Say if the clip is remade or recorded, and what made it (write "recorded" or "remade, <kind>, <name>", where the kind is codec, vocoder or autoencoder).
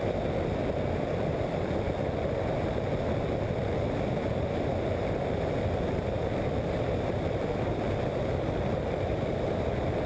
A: recorded